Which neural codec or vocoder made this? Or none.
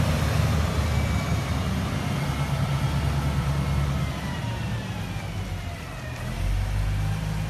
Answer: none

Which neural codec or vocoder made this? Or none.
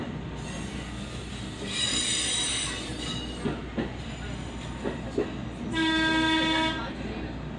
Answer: none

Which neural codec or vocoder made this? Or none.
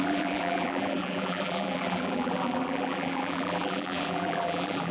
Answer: vocoder, BigVGAN v2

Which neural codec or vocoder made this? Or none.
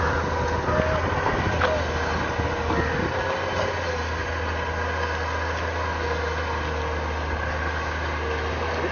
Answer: none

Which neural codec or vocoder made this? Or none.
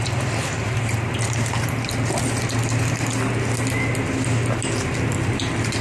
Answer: vocoder, BigVGAN v2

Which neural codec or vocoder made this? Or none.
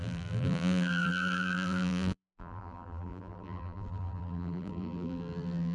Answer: vocoder, BigVGAN v2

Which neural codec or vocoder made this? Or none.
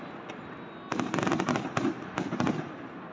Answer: none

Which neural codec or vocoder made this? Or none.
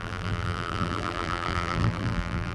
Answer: vocoder, BigVGAN v2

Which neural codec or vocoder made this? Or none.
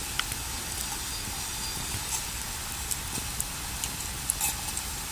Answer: none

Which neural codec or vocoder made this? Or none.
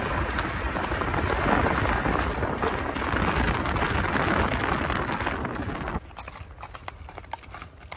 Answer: none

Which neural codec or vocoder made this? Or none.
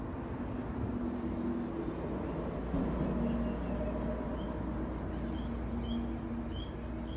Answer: none